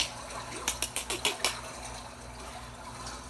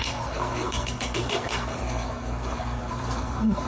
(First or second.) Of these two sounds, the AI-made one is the second